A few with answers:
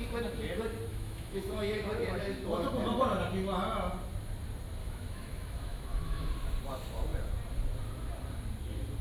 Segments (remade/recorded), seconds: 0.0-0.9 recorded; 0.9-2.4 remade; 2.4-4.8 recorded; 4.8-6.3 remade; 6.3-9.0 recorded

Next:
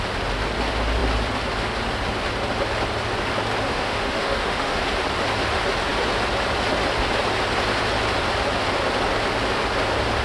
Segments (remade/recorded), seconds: 0.0-3.7 recorded; 3.7-4.8 remade; 4.8-10.2 recorded

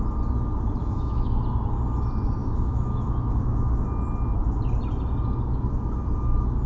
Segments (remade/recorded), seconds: 0.0-0.8 recorded; 0.8-1.3 remade; 1.3-2.4 recorded; 2.4-3.7 remade; 3.7-6.7 recorded

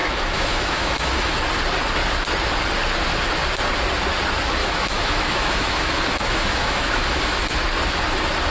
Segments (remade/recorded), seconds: 0.0-1.4 remade; 1.4-4.6 recorded; 4.6-7.6 remade; 7.6-8.5 recorded

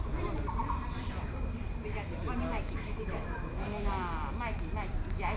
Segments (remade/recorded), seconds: 0.0-2.5 recorded; 2.5-3.9 remade; 3.9-5.4 recorded

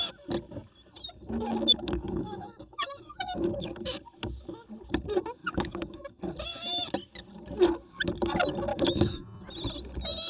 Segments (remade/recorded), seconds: 0.0-1.7 recorded; 1.7-3.7 remade; 3.7-5.4 recorded; 5.4-6.2 remade; 6.2-8.7 recorded; 8.7-9.5 remade; 9.5-10.3 recorded

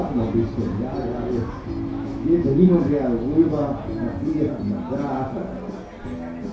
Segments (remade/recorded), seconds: 0.0-1.9 recorded; 1.9-3.5 remade; 3.5-6.5 recorded

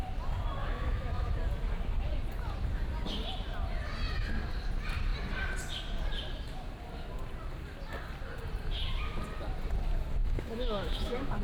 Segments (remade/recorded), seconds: 0.0-0.6 recorded; 0.6-1.3 remade; 1.3-10.2 recorded; 10.2-11.4 remade